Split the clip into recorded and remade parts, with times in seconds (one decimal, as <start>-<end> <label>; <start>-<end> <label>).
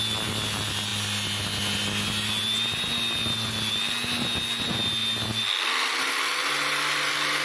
0.0-7.4 recorded